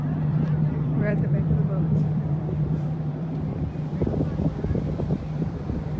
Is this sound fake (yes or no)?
yes